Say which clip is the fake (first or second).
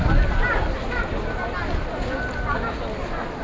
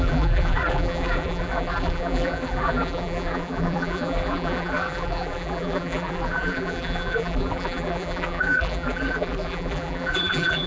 second